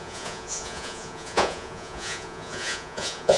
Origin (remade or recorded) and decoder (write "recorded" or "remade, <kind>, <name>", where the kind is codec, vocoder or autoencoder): remade, vocoder, Vocos